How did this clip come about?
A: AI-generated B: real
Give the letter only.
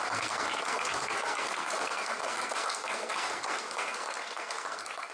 A